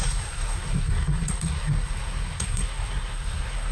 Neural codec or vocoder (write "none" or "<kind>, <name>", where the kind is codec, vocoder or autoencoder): codec, SNAC